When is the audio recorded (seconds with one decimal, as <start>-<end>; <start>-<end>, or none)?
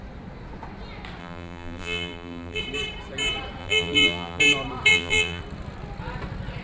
0.0-1.2; 2.6-3.6; 4.4-4.9; 5.4-6.6